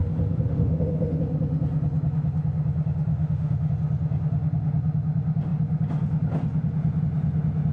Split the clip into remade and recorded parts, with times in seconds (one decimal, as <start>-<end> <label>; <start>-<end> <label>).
0.0-0.5 recorded; 0.5-1.2 remade; 1.2-3.1 recorded; 3.1-3.7 remade; 3.7-7.7 recorded